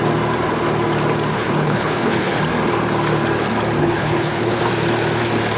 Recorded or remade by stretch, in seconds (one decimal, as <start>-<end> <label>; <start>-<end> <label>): 0.0-1.3 recorded; 1.3-2.4 remade; 2.4-3.8 recorded; 3.8-4.6 remade; 4.6-5.6 recorded